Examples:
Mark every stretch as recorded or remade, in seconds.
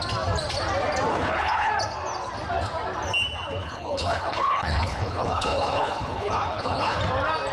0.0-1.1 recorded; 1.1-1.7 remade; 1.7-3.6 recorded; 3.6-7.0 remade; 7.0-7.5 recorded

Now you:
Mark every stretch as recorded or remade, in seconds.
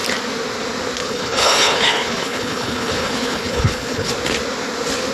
0.0-1.0 recorded; 1.0-4.1 remade; 4.1-5.1 recorded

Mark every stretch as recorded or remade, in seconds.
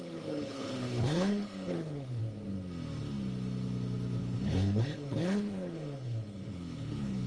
0.0-2.2 remade; 2.2-4.2 recorded; 4.2-7.3 remade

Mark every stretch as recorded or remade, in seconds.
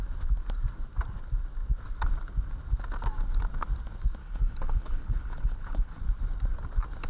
0.0-4.2 recorded; 4.2-6.0 remade; 6.0-7.1 recorded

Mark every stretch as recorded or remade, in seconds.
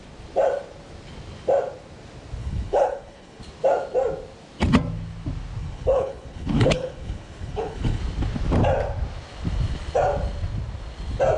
0.0-2.4 recorded; 2.4-3.4 remade; 3.4-5.6 recorded; 5.6-8.0 remade; 8.0-11.4 recorded